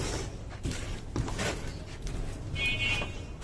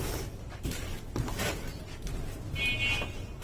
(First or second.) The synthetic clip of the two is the first